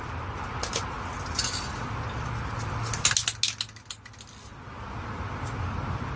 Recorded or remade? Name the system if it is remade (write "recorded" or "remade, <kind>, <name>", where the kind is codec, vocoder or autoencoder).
recorded